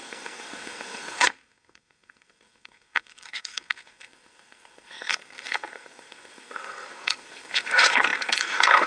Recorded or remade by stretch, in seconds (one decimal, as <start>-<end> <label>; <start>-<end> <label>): 0.0-8.9 remade